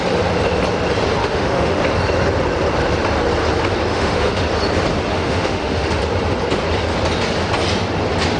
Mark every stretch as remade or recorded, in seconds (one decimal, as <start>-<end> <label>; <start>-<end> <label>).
0.0-1.2 recorded; 1.2-1.8 remade; 1.8-3.9 recorded; 3.9-4.4 remade; 4.4-5.1 recorded; 5.1-6.0 remade; 6.0-8.4 recorded